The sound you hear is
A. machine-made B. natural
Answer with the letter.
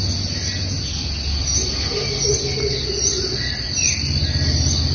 B